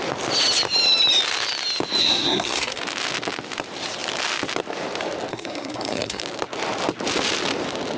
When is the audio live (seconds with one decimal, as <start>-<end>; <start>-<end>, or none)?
0.0-2.0; 2.8-5.3; 6.2-8.0